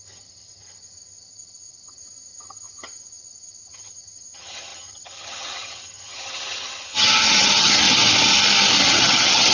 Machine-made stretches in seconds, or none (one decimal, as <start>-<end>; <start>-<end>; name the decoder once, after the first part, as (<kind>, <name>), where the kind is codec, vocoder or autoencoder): 0.0-8.0 (vocoder, HiFi-GAN); 8.9-9.5

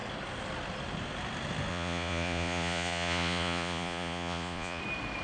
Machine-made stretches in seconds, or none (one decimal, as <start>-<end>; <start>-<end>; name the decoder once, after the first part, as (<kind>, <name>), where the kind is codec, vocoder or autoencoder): 1.7-4.8 (vocoder, Vocos)

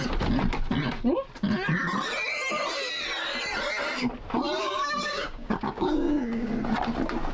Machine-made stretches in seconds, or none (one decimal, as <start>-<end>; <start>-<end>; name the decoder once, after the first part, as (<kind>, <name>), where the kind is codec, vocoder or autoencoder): 4.6-6.5 (codec, DAC)

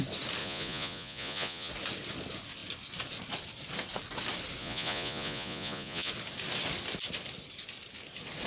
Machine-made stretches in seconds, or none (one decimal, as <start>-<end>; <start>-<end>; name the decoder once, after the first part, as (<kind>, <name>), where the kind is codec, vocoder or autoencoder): 0.4-1.7 (vocoder, Vocos); 4.6-6.1

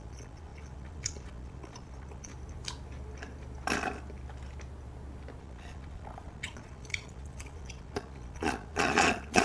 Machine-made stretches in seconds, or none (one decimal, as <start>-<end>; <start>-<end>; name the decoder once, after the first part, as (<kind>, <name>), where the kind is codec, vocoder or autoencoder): 0.0-2.3 (vocoder, Vocos); 5.4-9.4

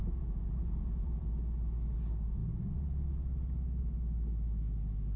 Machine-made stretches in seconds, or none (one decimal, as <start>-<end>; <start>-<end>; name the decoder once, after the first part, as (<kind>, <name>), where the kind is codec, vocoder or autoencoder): 0.0-1.3 (vocoder, Vocos)

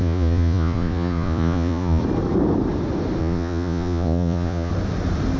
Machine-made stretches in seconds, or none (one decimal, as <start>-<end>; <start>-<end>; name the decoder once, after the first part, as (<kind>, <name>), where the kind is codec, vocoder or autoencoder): 0.0-2.0 (vocoder, Vocos); 3.2-4.7

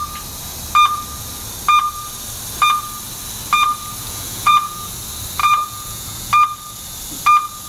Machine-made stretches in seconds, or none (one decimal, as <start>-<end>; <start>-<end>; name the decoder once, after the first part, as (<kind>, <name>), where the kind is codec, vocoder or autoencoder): 4.0-4.9 (vocoder, Vocos); 5.4-6.3